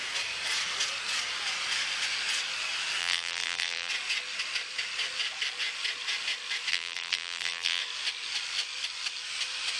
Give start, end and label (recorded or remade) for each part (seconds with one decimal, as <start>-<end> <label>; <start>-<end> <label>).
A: 0.0-3.0 recorded; 3.0-3.9 remade; 3.9-6.7 recorded; 6.7-7.8 remade; 7.8-9.8 recorded